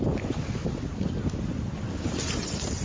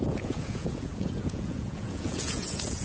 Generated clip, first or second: second